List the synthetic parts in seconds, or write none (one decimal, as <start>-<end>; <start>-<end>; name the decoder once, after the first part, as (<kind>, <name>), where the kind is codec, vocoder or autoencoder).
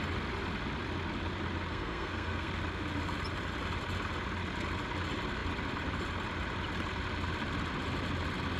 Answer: 1.7-2.5 (codec, SNAC)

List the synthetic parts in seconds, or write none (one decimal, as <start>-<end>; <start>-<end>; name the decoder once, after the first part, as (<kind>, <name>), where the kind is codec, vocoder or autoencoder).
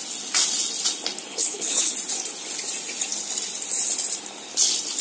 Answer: 1.3-1.9 (codec, HILCodec)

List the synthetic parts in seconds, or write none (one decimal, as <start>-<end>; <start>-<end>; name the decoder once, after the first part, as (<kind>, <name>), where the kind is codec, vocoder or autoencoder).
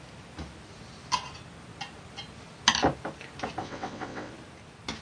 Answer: 3.6-4.3 (vocoder, WaveNeXt)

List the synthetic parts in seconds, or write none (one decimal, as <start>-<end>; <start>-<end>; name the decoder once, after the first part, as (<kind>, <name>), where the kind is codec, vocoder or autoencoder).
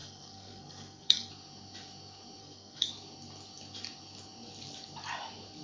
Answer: 0.0-1.3 (codec, SNAC); 2.4-2.9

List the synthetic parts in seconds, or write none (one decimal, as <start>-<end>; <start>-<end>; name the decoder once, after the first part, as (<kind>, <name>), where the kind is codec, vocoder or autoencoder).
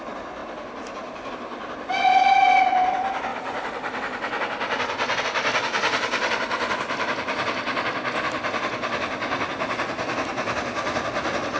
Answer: none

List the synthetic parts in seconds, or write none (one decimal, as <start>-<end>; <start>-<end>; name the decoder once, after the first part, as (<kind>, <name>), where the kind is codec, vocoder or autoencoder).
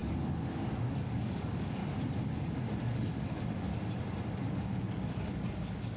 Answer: 0.0-1.8 (codec, DAC); 2.8-3.7; 4.3-6.0